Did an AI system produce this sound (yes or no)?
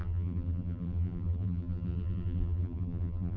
yes